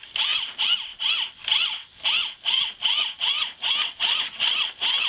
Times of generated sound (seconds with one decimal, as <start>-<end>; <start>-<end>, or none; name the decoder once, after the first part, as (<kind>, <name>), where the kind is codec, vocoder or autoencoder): none